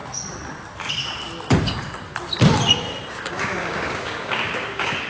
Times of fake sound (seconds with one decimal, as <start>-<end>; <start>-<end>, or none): 3.1-5.1